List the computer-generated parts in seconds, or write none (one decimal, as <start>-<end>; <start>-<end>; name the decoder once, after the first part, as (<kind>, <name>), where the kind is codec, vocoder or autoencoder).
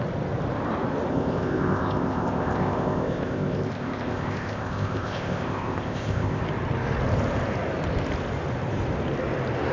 1.1-6.4 (codec, ZipCodec)